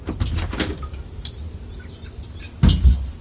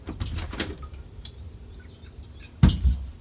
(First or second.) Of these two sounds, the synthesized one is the second